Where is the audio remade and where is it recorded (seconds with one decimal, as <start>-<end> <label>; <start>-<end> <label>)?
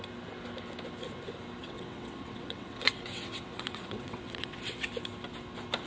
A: 0.0-1.6 recorded; 1.6-4.9 remade; 4.9-5.9 recorded